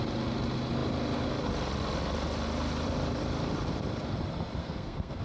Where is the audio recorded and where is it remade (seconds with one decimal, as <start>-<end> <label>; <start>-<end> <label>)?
0.0-4.6 recorded; 4.6-5.2 remade